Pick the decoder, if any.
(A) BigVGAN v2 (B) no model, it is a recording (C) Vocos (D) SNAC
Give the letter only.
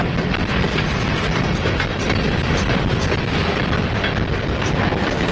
A